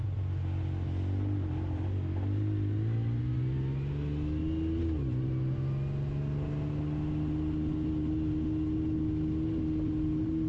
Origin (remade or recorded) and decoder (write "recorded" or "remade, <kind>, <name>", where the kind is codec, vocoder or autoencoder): recorded